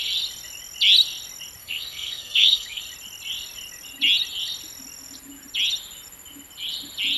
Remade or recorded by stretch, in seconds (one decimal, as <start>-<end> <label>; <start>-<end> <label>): 0.0-1.6 recorded; 1.6-2.8 remade; 2.8-7.2 recorded